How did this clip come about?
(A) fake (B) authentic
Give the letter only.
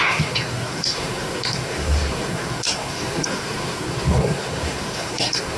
A